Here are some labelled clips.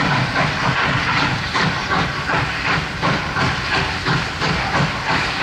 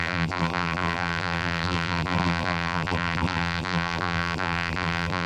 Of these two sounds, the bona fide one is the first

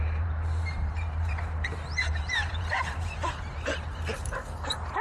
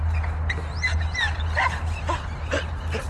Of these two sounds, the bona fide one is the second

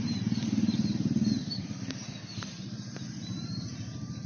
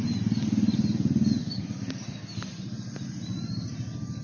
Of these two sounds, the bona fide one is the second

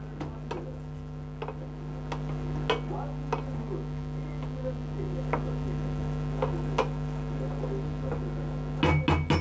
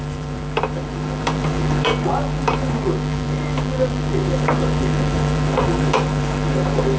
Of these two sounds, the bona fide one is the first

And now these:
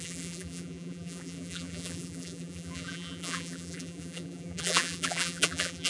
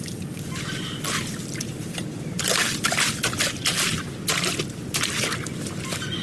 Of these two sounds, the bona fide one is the second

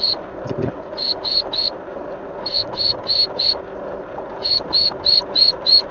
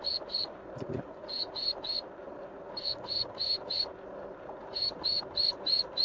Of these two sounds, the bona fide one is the first